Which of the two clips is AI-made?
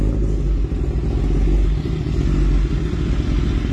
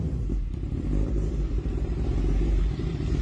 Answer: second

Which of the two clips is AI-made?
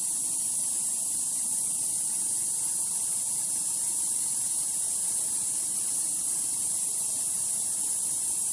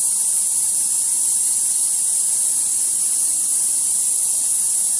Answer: first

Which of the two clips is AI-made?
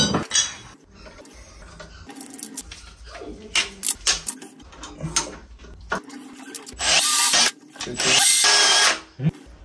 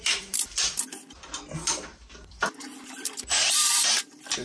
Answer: second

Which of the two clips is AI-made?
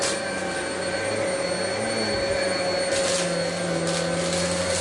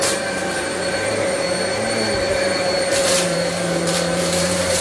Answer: second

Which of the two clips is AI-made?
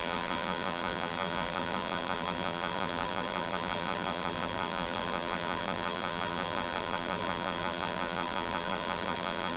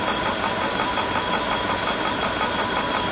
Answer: first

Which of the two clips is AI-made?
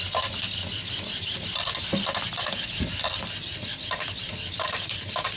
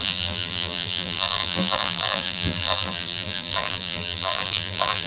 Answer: second